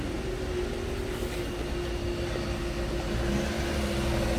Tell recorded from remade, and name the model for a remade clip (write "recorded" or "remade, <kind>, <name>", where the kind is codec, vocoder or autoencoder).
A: recorded